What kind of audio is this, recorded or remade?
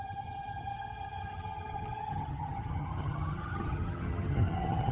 remade